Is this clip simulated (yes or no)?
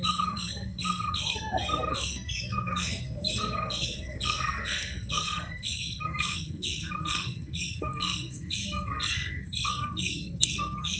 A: yes